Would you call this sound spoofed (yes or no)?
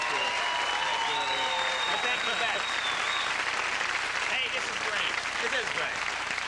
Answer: no